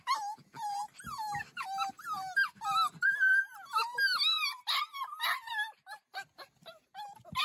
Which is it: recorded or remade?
recorded